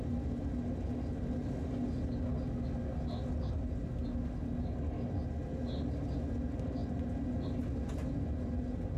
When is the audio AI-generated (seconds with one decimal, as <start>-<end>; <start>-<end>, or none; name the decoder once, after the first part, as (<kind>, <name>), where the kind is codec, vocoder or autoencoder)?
none